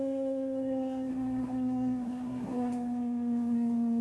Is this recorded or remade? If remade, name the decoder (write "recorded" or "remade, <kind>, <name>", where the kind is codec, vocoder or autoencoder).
remade, codec, SNAC